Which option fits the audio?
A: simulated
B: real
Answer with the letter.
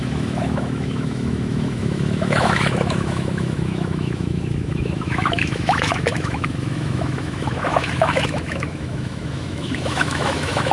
A